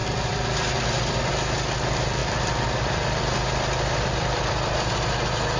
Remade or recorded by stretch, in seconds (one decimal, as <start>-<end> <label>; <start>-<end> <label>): 0.0-1.3 remade; 1.3-2.2 recorded; 2.2-4.9 remade; 4.9-5.6 recorded

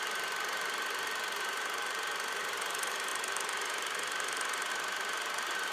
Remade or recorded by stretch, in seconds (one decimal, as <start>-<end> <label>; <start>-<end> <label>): 0.0-5.7 remade

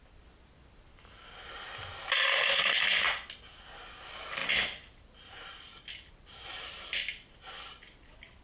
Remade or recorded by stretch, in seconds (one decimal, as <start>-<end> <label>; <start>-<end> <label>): 0.0-4.4 recorded; 4.4-6.1 remade; 6.1-8.4 recorded